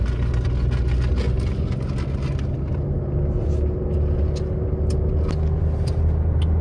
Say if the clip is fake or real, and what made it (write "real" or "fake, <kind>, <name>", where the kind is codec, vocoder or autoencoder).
real